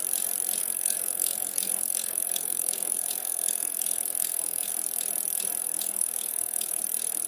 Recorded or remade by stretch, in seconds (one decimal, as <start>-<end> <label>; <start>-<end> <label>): 0.0-0.6 recorded; 0.6-4.7 remade; 4.7-5.6 recorded; 5.6-6.8 remade; 6.8-7.3 recorded